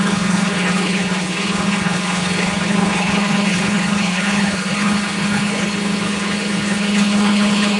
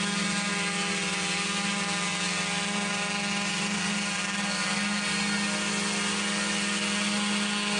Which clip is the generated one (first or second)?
first